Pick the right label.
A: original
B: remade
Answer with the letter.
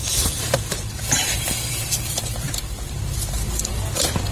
B